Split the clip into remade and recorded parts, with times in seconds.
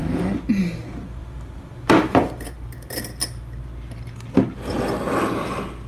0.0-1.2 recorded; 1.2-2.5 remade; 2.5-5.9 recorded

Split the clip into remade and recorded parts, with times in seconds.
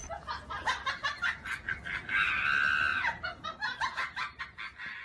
0.0-2.9 recorded; 2.9-4.4 remade; 4.4-5.0 recorded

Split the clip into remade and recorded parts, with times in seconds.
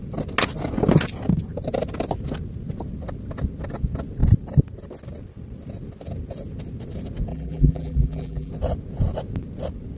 0.0-7.3 recorded; 7.3-8.5 remade; 8.5-10.0 recorded